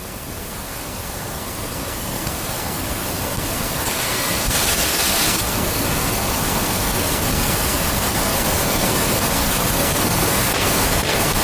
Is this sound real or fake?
fake